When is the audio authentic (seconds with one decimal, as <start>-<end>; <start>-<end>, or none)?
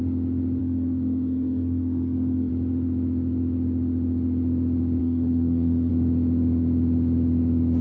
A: 0.0-0.6; 2.5-5.0; 5.9-7.8